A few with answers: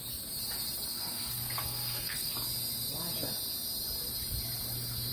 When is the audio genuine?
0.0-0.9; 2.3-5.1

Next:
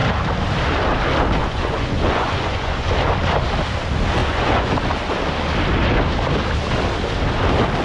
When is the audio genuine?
0.0-1.4; 2.9-4.2; 4.8-7.8

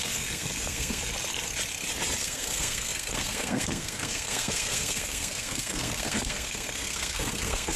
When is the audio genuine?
1.1-2.2

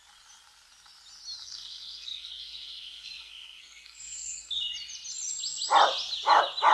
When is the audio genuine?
0.0-1.4; 4.5-6.7

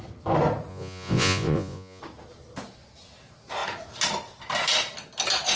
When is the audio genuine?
0.0-0.7; 2.0-5.6

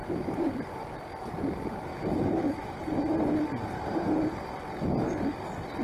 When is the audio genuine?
0.0-1.9; 2.8-5.8

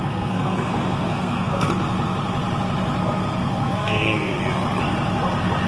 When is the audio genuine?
1.7-3.0; 4.4-5.7